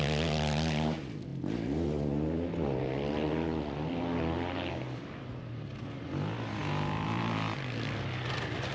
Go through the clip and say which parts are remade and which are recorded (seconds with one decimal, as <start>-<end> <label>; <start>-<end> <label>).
0.0-8.7 recorded